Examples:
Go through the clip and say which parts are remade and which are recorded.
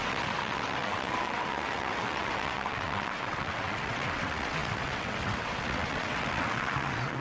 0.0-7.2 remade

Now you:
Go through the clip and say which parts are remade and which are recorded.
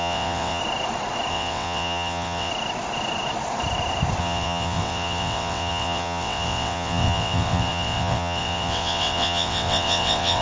0.0-0.6 remade; 0.6-1.3 recorded; 1.3-2.5 remade; 2.5-4.2 recorded; 4.2-10.4 remade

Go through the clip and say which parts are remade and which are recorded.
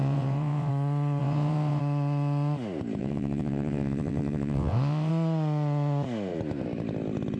0.0-0.7 remade; 0.7-1.2 recorded; 1.2-1.8 remade; 1.8-3.0 recorded; 3.0-5.1 remade; 5.1-7.4 recorded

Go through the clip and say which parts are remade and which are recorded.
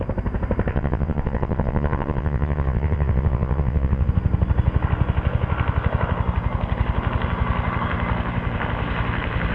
0.0-0.7 recorded; 0.7-4.1 remade; 4.1-9.5 recorded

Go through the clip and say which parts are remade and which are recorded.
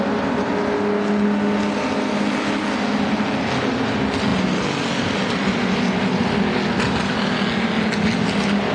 0.0-8.7 recorded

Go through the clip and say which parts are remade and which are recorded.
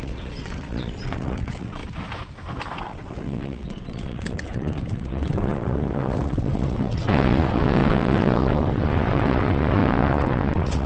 0.0-1.8 remade; 1.8-2.8 recorded; 2.8-10.9 remade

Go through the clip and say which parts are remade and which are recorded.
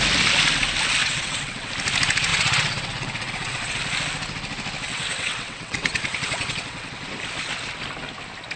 0.0-1.0 recorded; 1.0-1.7 remade; 1.7-2.3 recorded; 2.3-3.8 remade; 3.8-4.9 recorded; 4.9-6.9 remade; 6.9-8.6 recorded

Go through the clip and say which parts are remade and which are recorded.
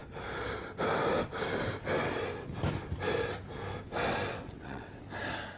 0.0-4.3 recorded; 4.3-5.0 remade; 5.0-5.6 recorded